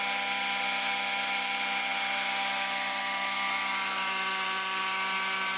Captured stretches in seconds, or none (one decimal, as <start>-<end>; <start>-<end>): 0.0-5.6

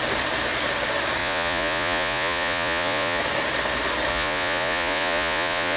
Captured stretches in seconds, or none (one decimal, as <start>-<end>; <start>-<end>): 0.0-1.2; 3.2-4.1

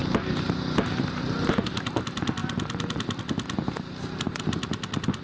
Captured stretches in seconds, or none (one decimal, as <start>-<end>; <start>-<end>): 0.0-5.2

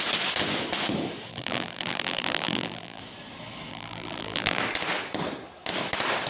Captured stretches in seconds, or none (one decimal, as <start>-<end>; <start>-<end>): 0.0-1.3; 3.0-3.7; 4.6-6.3

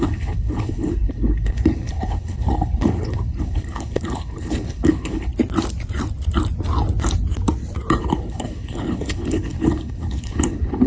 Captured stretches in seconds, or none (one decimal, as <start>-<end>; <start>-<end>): 5.3-8.0

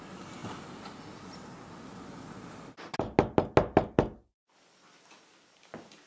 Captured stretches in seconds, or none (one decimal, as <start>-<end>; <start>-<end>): 0.0-6.1